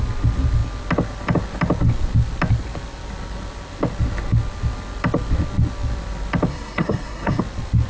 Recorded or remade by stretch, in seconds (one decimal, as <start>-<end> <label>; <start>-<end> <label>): 0.0-6.5 recorded; 6.5-7.4 remade; 7.4-7.9 recorded